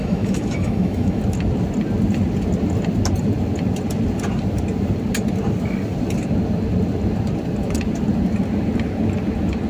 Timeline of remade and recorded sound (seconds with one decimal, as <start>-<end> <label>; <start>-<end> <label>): 0.0-1.2 remade; 1.2-9.7 recorded